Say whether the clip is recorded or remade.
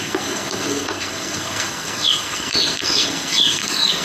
remade